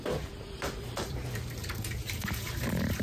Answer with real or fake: fake